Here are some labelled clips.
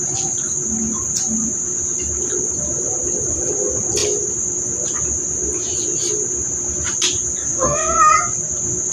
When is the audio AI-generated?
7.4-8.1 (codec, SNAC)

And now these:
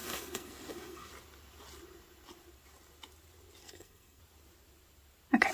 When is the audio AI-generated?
0.0-1.1 (codec, SNAC); 3.6-4.2

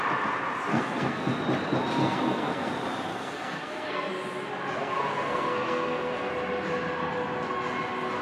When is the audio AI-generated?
0.7-1.3 (codec, SNAC); 2.0-2.7; 3.1-4.1; 4.8-6.3

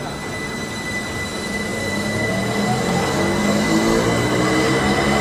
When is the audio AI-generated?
none

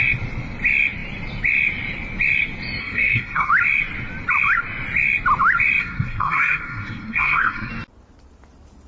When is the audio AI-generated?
2.8-3.5 (codec, SNAC); 5.8-7.7

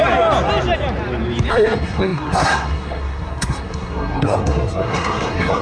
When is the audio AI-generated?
1.5-5.6 (codec, SNAC)

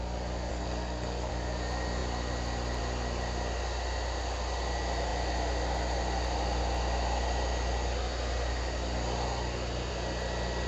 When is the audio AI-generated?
0.5-1.3 (codec, SNAC)

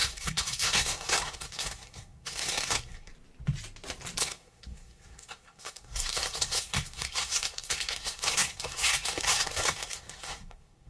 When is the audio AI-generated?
0.0-3.1 (codec, SNAC); 4.2-10.9